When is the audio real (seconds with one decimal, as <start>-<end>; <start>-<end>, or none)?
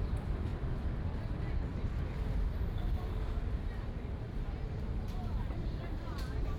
0.0-6.6